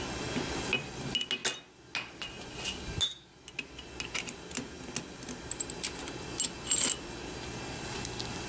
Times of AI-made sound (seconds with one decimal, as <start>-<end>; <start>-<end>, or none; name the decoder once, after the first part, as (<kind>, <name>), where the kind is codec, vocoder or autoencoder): none